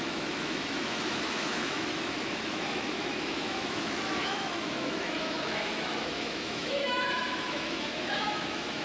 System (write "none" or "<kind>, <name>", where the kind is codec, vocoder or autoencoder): autoencoder, DAC-VAE